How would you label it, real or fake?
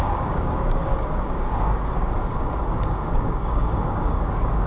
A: fake